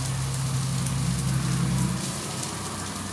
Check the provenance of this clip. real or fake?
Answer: real